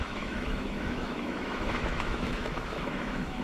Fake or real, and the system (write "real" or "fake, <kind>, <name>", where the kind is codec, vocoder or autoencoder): fake, autoencoder, DAC-VAE